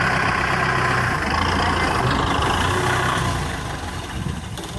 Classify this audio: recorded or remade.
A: recorded